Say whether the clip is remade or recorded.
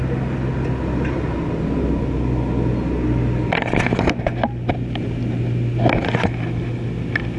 recorded